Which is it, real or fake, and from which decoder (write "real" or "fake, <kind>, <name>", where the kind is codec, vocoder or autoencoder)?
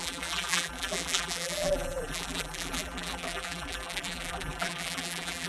fake, vocoder, BigVGAN v2